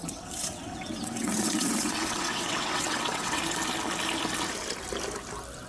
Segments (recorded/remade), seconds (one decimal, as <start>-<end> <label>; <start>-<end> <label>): 0.0-3.4 remade; 3.4-5.7 recorded